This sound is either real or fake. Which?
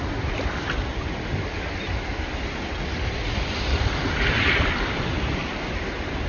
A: real